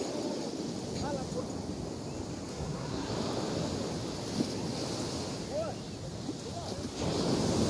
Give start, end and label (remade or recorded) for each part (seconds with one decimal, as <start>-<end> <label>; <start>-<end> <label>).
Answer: 0.0-2.5 recorded; 2.5-3.1 remade; 3.1-7.7 recorded